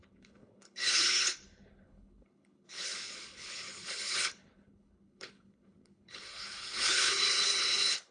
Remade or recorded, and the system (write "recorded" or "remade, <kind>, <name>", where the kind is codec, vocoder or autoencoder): remade, codec, HILCodec